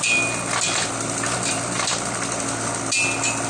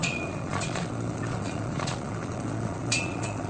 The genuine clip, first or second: first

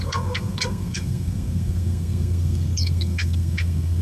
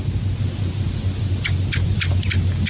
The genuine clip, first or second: second